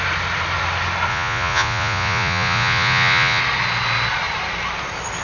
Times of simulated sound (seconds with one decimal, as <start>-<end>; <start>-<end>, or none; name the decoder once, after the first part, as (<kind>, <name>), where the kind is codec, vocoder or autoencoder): 1.1-3.4 (vocoder, Vocos)